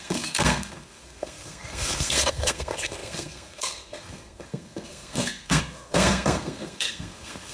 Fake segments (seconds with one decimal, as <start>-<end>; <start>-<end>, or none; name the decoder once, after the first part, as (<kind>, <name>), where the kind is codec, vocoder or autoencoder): 0.0-7.5 (codec, SNAC)